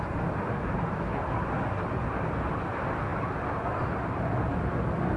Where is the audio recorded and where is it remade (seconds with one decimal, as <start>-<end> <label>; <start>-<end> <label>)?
0.0-5.2 recorded